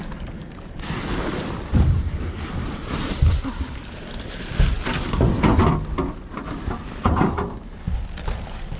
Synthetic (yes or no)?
yes